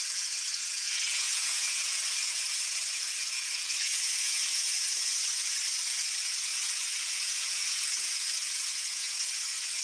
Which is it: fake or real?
fake